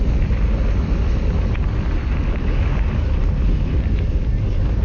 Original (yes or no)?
yes